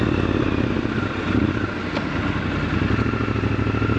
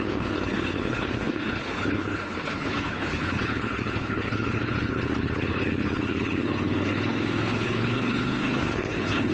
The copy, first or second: second